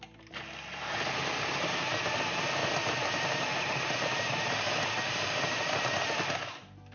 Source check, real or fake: real